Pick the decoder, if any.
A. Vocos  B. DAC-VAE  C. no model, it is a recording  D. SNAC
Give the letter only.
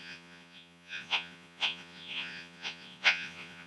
A